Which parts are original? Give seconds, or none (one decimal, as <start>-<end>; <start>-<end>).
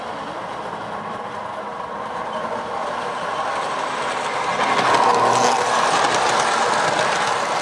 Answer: 0.0-1.7; 4.0-7.6